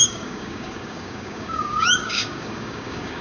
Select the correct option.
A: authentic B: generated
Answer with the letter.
B